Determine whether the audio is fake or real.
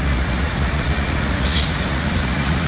fake